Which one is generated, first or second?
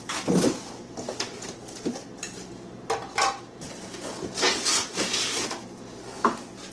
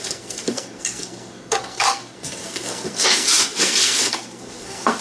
second